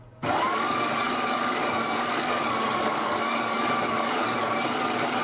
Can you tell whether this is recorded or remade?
remade